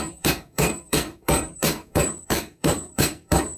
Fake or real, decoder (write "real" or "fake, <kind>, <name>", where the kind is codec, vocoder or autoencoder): fake, codec, SNAC